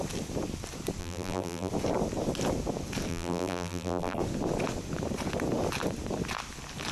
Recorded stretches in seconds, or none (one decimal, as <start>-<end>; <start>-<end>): 0.0-1.0; 1.7-3.1; 4.2-6.9